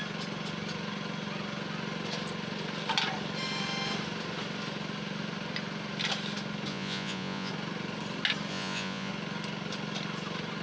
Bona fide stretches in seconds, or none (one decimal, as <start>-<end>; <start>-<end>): 0.0-6.7; 7.5-8.5; 9.1-10.6